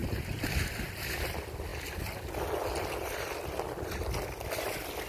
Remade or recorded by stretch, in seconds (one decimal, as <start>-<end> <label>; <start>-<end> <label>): 0.0-5.1 recorded